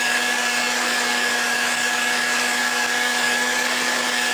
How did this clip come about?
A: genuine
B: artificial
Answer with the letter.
B